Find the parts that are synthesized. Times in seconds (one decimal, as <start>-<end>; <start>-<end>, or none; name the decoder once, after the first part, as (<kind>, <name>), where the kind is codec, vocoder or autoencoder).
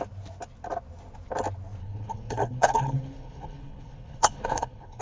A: 1.8-5.0 (codec, HILCodec)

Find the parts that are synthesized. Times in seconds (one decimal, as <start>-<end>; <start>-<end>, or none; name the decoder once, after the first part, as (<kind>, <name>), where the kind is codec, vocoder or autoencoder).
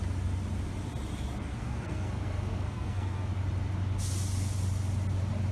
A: 1.4-3.3 (codec, SNAC)